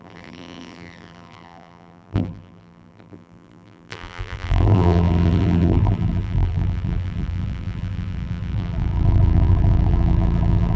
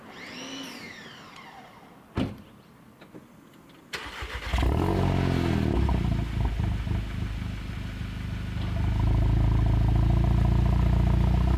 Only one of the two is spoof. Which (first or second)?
first